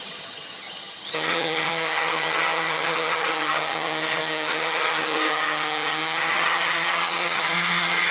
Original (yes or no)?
no